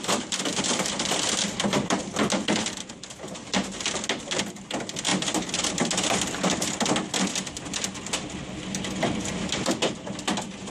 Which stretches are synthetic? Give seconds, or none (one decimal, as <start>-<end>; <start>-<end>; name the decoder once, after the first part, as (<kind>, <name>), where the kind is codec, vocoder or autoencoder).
0.5-2.0 (vocoder, BigVGAN v2)